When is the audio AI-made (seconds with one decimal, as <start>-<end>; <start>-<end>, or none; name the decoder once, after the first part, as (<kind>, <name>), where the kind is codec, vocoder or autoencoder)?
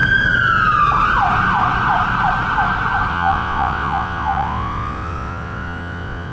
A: 3.1-6.3 (vocoder, WaveNeXt)